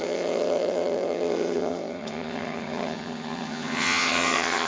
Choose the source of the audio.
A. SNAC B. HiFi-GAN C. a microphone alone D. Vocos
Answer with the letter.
B